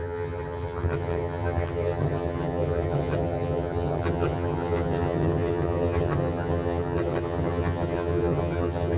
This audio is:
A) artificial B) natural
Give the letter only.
A